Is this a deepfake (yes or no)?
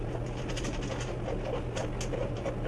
no